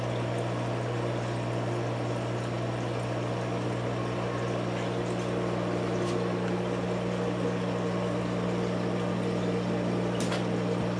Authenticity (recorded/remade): recorded